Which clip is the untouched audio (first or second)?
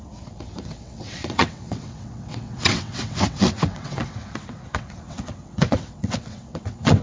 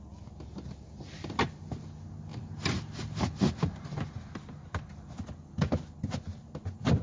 second